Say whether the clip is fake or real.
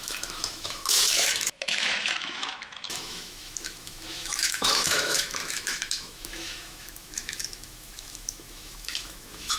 fake